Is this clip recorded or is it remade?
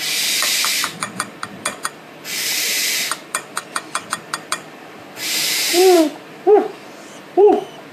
remade